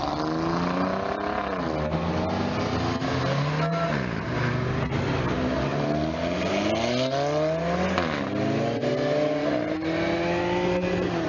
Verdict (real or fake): real